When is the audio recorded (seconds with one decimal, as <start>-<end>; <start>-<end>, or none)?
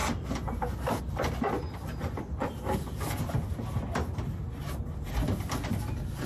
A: 0.0-6.3